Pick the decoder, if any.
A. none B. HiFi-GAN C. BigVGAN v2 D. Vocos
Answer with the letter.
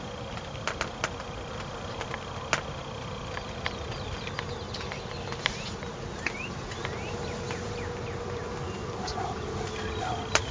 A